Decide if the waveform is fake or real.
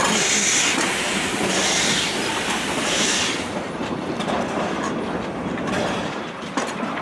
fake